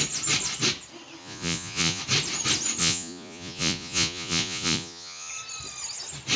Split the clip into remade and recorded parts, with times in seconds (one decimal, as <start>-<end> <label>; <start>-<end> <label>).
0.0-1.2 recorded; 1.2-2.0 remade; 2.0-2.8 recorded; 2.8-5.3 remade; 5.3-6.4 recorded